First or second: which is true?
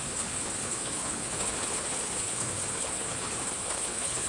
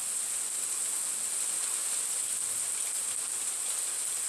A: second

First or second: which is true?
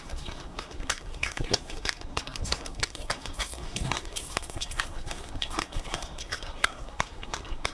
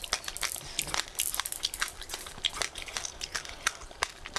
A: second